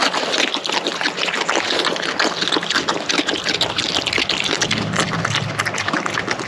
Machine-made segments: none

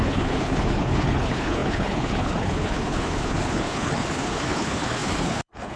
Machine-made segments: 0.0-5.8 (codec, HILCodec)

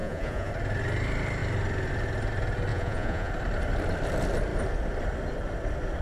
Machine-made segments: 0.0-0.5 (vocoder, Vocos); 2.7-3.3